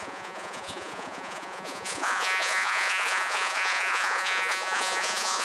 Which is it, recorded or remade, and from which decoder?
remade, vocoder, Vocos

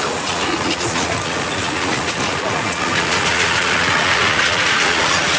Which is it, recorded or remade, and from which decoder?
remade, vocoder, Vocos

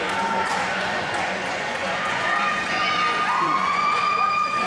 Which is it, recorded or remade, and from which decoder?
remade, vocoder, Vocos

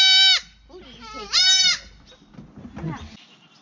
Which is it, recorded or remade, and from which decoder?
recorded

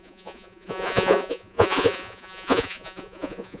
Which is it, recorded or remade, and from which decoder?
remade, vocoder, Vocos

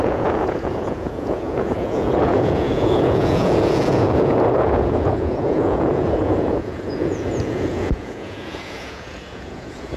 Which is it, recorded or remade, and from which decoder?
remade, vocoder, Vocos